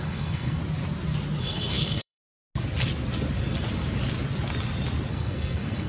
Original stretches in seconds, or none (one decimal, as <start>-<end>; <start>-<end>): 0.6-1.4; 2.2-5.1

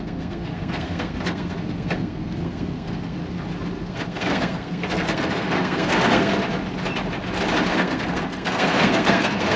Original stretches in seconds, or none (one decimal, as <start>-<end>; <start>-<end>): 3.2-3.8; 6.3-7.7

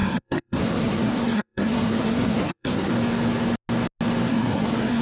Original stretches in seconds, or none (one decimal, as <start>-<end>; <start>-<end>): 2.9-4.3

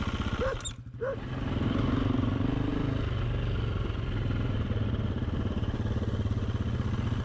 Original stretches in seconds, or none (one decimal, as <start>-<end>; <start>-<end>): 0.0-7.2

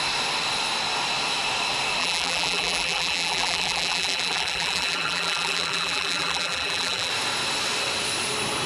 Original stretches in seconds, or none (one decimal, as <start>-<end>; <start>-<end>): 0.0-2.0; 7.1-8.7